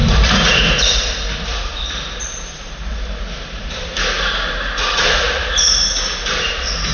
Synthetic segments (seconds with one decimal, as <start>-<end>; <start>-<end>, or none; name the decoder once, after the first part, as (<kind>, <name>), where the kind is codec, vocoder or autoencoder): 0.0-6.9 (vocoder, BigVGAN v2)